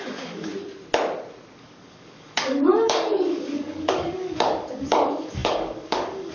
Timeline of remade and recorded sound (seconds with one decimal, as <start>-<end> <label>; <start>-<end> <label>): 0.0-0.5 remade; 0.5-1.6 recorded; 1.6-6.3 remade